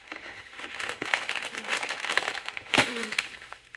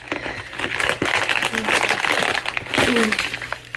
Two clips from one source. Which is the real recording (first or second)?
second